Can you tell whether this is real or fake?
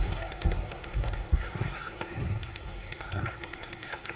fake